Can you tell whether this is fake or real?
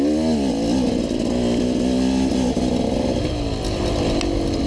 real